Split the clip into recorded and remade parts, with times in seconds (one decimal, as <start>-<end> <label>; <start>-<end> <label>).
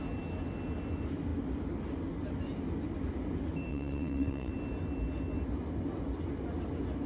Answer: 0.0-3.7 recorded; 3.7-4.5 remade; 4.5-7.1 recorded